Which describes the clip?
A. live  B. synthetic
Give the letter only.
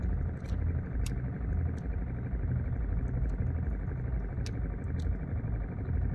A